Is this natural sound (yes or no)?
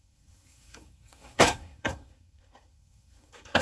no